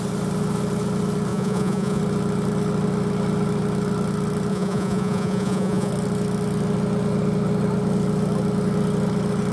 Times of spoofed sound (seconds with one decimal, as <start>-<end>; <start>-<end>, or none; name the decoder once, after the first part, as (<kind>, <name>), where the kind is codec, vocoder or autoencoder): 1.3-2.0 (vocoder, Vocos); 4.5-5.9